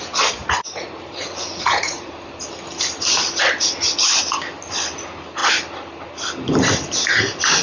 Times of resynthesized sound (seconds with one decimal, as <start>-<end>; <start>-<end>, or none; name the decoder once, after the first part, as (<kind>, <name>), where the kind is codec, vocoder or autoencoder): 0.4-2.1 (vocoder, Vocos)